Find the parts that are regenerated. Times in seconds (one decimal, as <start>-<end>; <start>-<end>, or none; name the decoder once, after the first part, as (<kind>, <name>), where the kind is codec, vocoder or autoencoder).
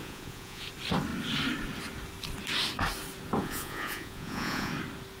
0.0-0.7 (vocoder, Vocos); 3.4-4.7